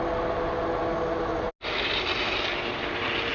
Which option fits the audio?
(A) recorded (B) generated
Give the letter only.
A